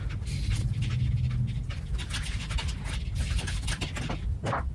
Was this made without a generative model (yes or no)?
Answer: yes